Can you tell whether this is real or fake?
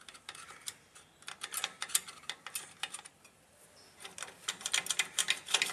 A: real